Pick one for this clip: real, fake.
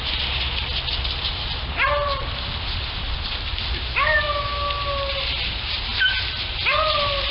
real